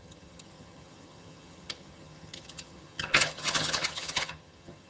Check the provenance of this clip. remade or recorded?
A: remade